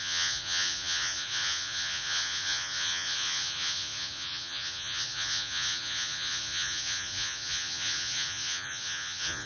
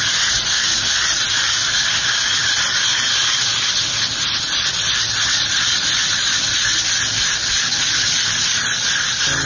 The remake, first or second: first